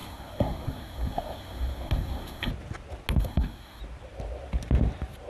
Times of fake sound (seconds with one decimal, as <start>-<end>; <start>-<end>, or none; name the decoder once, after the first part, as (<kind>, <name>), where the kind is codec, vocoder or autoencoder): 0.0-2.5 (codec, SNAC); 3.2-3.8